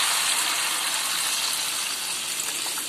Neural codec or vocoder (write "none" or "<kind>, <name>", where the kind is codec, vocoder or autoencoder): none